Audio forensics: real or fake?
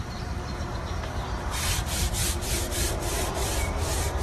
fake